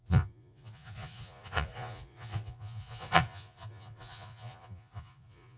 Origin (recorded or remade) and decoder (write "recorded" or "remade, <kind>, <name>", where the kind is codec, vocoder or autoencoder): remade, vocoder, Vocos